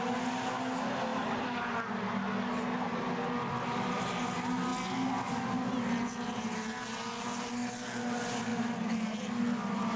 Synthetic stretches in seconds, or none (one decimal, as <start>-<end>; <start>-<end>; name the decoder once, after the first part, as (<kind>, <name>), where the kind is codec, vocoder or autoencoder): none